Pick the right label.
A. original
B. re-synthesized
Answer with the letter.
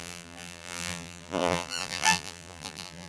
B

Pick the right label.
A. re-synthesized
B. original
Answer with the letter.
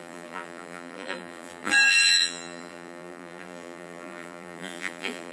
A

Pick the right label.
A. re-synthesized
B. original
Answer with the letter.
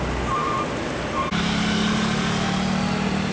B